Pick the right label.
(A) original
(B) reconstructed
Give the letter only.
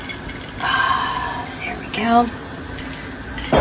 A